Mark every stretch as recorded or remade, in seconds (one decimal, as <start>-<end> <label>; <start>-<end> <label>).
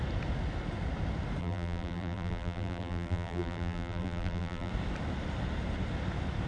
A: 0.0-1.4 recorded; 1.4-4.7 remade; 4.7-6.5 recorded